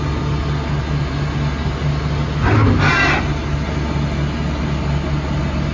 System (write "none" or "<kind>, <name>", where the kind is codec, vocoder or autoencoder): none